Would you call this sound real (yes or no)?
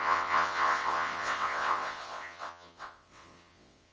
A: no